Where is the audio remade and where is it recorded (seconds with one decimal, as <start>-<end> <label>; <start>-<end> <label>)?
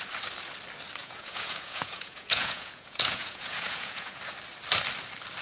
0.0-1.0 recorded; 1.0-4.2 remade; 4.2-5.4 recorded